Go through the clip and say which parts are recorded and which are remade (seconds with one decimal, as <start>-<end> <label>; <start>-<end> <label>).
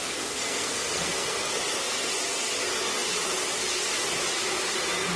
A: 0.0-1.6 remade; 1.6-5.2 recorded